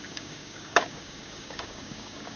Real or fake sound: fake